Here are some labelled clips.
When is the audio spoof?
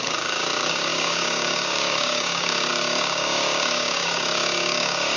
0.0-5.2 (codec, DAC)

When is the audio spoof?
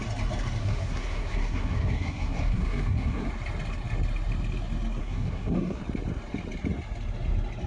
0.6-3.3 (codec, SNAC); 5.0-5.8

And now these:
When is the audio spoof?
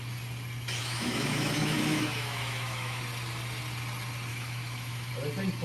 0.8-3.0 (autoencoder, DAC-VAE); 4.3-5.1